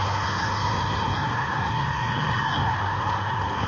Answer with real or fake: fake